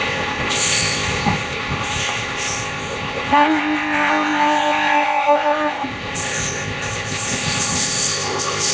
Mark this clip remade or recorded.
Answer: remade